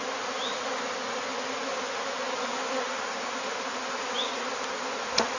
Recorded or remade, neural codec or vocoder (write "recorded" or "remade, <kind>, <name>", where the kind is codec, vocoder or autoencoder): recorded